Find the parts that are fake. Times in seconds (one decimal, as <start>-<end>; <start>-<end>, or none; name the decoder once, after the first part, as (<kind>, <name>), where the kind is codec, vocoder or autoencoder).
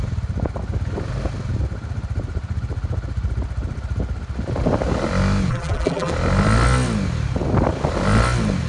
5.5-6.1 (vocoder, BigVGAN v2)